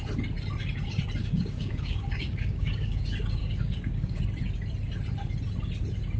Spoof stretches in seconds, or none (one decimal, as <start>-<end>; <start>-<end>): 1.2-3.0; 3.4-4.2